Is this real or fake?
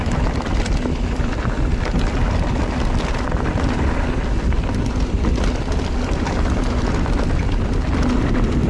real